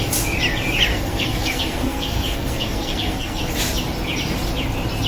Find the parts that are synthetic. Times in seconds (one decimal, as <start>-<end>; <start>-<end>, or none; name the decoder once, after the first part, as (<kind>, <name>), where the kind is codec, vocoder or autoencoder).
0.9-3.4 (codec, SNAC)